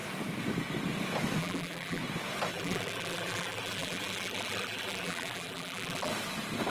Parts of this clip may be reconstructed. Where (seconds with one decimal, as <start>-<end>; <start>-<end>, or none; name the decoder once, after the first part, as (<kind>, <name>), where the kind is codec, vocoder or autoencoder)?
1.4-2.0 (vocoder, BigVGAN v2); 2.5-6.1